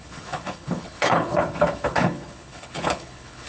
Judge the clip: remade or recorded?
remade